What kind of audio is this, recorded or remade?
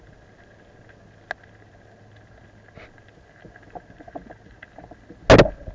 recorded